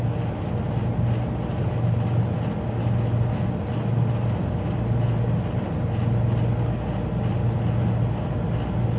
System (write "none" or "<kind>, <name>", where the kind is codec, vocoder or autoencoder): none